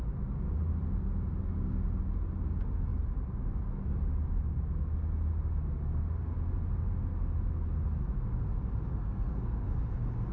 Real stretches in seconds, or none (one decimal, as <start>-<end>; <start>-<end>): 0.0-8.9; 9.7-10.3